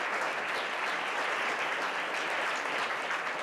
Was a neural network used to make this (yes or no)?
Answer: no